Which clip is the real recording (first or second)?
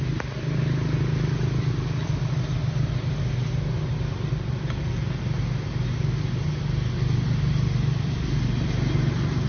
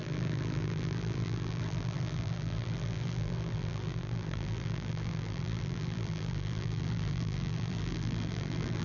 first